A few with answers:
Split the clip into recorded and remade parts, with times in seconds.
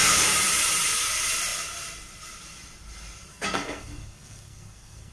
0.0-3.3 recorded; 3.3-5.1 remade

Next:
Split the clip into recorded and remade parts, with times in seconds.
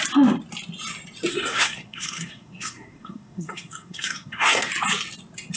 0.0-1.3 recorded; 1.3-4.7 remade; 4.7-5.6 recorded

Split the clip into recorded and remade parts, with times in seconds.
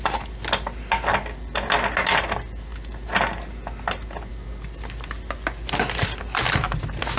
0.0-7.2 recorded